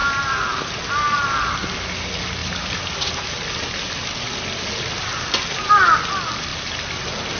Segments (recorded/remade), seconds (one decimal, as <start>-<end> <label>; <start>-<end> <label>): 0.0-0.8 remade; 0.8-7.4 recorded